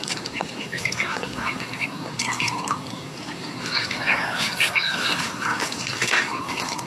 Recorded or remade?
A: remade